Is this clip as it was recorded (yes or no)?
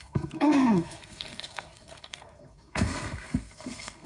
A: no